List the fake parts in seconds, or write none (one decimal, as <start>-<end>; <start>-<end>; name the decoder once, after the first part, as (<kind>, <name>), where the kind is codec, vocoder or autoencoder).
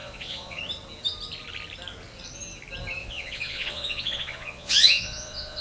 0.0-0.6 (vocoder, Vocos); 3.0-5.6